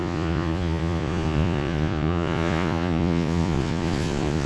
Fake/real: fake